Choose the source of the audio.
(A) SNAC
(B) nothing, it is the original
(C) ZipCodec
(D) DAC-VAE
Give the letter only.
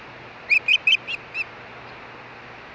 B